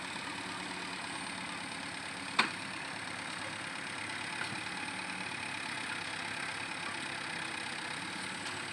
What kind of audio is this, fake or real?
real